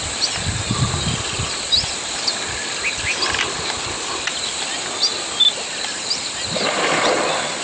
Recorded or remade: recorded